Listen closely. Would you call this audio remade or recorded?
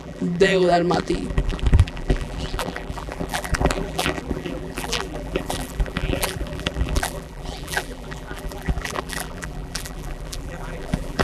remade